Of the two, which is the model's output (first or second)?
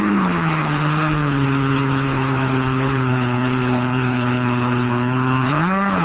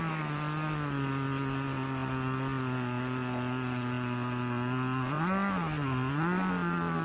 first